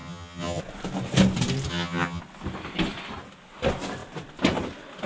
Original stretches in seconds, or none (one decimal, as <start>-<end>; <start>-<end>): 0.6-1.7; 2.2-5.1